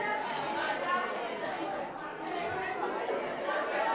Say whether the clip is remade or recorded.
recorded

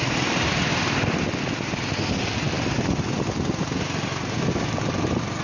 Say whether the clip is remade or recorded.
recorded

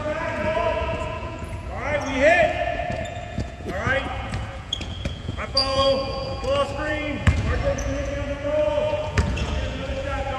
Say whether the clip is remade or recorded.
remade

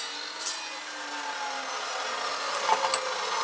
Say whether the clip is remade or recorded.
recorded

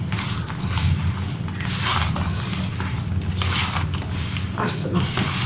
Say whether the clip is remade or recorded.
recorded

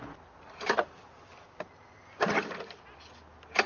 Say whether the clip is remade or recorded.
recorded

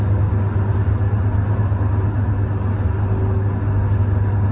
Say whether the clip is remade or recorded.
recorded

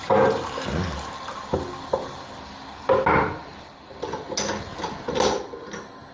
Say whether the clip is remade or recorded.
recorded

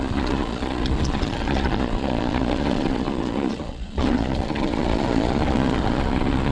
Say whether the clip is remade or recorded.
remade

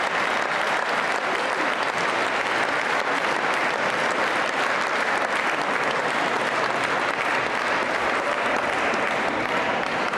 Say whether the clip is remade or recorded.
recorded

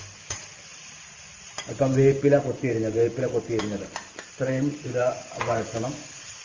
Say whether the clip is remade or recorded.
remade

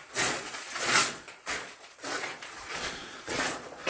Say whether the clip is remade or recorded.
remade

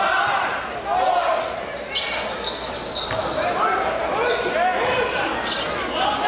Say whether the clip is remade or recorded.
recorded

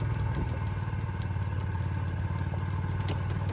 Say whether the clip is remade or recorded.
recorded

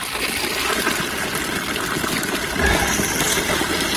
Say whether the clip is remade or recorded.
remade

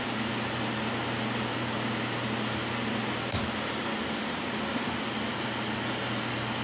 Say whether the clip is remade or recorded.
recorded